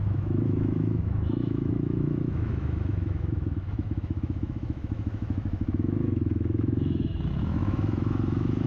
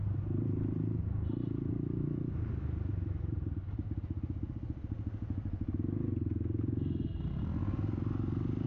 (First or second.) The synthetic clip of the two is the first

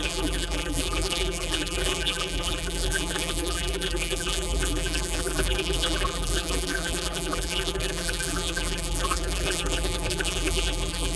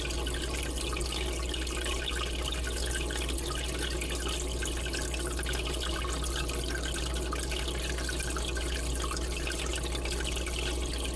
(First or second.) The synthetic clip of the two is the first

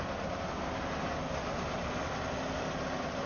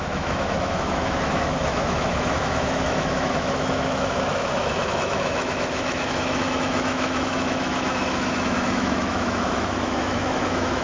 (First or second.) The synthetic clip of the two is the second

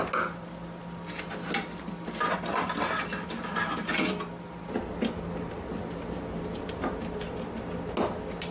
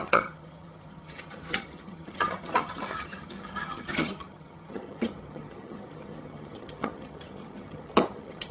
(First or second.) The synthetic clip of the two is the second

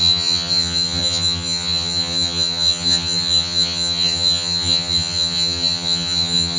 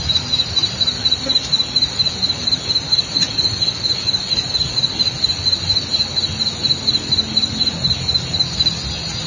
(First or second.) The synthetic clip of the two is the first